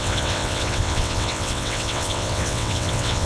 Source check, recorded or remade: remade